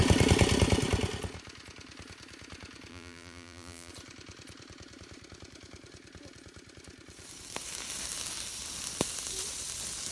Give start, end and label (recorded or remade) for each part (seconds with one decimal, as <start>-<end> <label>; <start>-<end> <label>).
0.0-2.9 recorded; 2.9-3.9 remade; 3.9-10.1 recorded